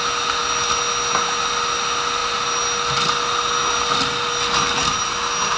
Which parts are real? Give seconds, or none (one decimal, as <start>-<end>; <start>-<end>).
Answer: 0.0-5.6